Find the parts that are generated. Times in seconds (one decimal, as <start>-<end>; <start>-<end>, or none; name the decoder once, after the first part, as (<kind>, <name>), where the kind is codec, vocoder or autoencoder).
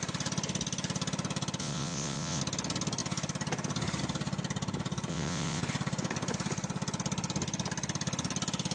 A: 1.6-2.4 (vocoder, WaveNeXt); 5.1-5.6